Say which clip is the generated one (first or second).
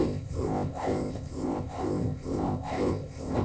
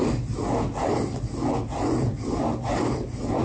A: first